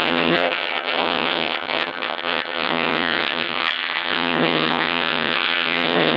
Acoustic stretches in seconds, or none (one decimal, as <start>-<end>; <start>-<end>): none